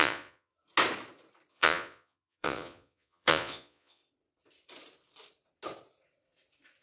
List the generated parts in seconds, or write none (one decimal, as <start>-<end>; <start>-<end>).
0.0-0.5; 1.5-4.0